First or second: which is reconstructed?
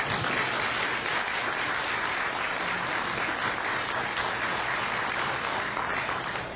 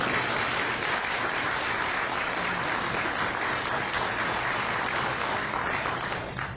second